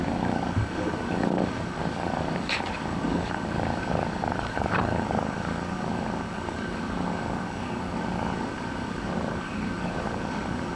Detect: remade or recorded remade